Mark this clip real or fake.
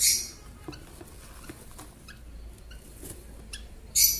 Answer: real